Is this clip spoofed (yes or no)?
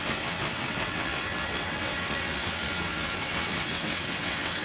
yes